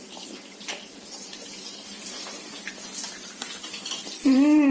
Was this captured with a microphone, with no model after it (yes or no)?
yes